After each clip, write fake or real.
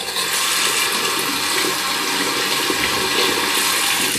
real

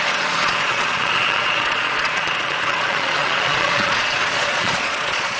fake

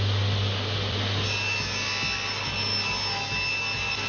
real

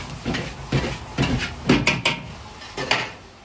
real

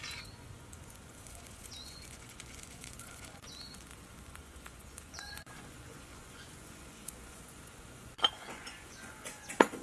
fake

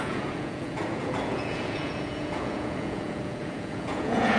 fake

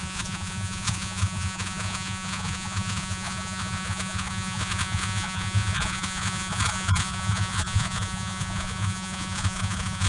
fake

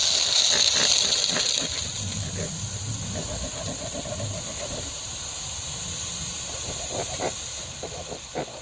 real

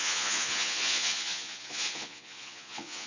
fake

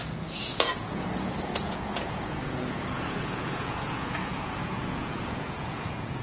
fake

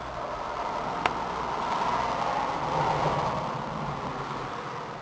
real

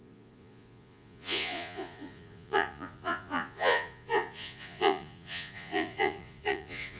fake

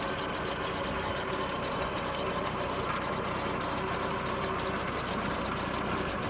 real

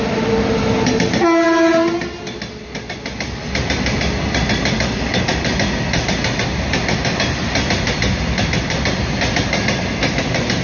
real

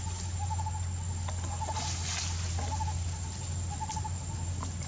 real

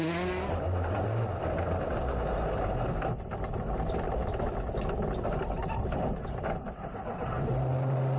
real